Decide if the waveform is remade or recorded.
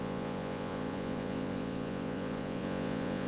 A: remade